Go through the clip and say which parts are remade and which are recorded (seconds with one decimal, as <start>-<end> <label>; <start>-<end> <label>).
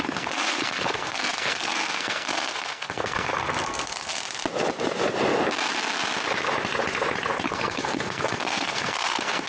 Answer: 0.0-4.2 remade; 4.2-7.5 recorded; 7.5-9.5 remade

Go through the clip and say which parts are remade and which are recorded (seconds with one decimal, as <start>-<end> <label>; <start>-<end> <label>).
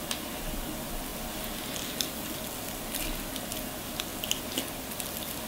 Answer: 0.0-5.5 recorded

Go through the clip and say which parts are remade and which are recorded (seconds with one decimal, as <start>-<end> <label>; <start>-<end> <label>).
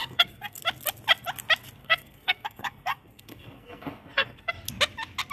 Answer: 0.0-0.6 remade; 0.6-1.8 recorded; 1.8-4.5 remade; 4.5-5.3 recorded